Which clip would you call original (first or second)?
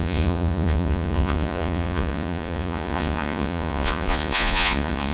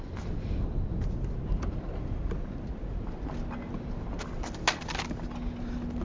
second